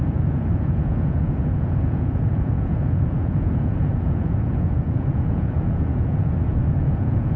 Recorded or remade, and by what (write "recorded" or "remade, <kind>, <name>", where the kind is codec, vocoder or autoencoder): remade, vocoder, Vocos